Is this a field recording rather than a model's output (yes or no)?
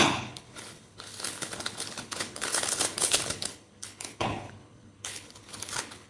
no